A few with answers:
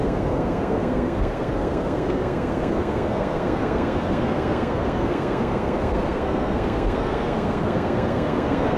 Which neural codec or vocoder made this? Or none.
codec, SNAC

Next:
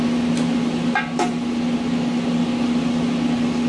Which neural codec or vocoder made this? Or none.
none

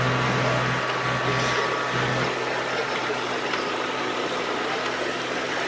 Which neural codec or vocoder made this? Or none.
none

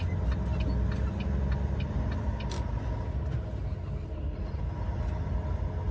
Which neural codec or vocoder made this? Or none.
none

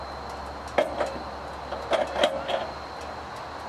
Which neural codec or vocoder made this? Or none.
none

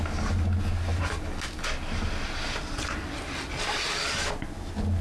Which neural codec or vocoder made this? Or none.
none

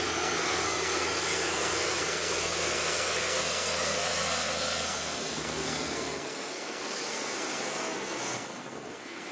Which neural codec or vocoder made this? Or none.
codec, SNAC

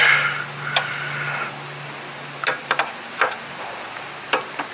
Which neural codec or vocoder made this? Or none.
none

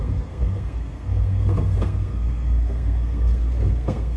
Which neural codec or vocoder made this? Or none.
codec, SNAC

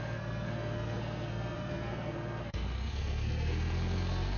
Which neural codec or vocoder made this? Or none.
codec, SNAC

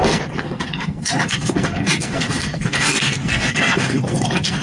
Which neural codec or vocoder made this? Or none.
codec, SNAC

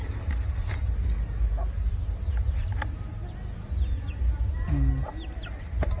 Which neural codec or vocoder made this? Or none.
none